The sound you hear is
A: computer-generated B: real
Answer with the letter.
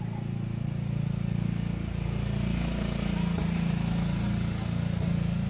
B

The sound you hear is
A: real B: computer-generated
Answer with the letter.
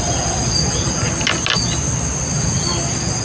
A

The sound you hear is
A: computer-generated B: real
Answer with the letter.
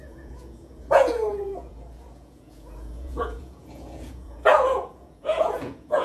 A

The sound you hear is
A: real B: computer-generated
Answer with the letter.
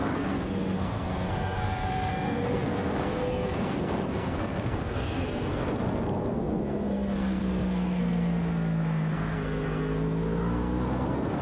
B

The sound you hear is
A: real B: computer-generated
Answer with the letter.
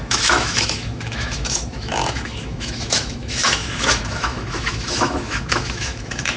B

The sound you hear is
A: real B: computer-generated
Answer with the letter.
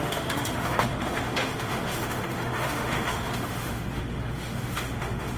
B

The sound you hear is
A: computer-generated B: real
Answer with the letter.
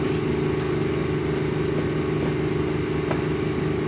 B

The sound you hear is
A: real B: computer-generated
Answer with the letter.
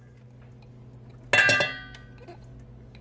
A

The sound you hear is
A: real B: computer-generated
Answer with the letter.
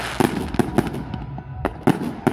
A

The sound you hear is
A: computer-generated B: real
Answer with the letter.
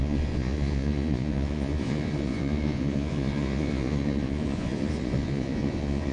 A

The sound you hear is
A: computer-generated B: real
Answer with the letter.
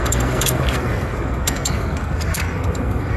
A